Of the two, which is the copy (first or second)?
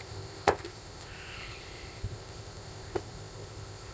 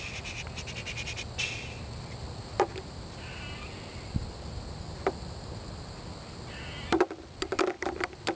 first